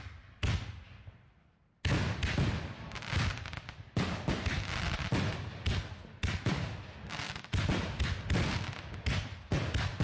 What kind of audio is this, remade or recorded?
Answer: recorded